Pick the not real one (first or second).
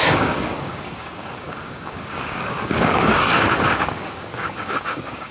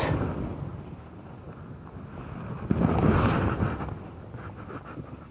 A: first